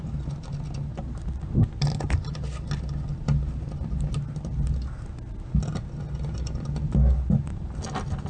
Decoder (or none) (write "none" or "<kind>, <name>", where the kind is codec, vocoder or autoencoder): none